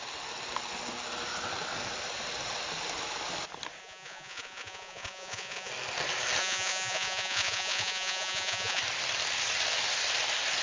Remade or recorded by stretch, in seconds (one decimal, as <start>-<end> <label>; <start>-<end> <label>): 0.0-3.8 recorded; 3.8-5.7 remade; 5.7-6.4 recorded; 6.4-8.8 remade; 8.8-10.6 recorded